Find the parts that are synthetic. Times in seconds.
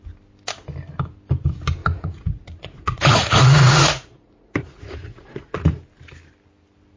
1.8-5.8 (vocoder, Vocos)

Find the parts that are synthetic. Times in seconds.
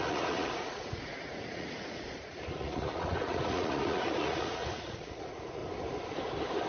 0.0-5.6 (vocoder, Vocos)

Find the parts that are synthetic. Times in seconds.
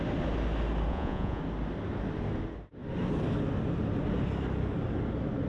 0.9-1.4 (vocoder, Vocos)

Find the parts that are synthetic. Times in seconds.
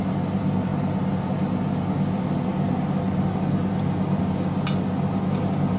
none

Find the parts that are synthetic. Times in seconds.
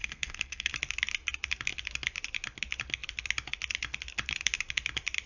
0.0-0.7 (codec, SNAC)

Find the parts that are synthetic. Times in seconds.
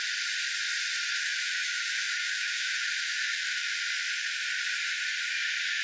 1.3-3.7 (autoencoder, DAC-VAE)